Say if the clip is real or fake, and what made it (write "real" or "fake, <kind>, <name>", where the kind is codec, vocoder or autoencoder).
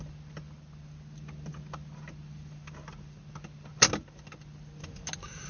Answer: real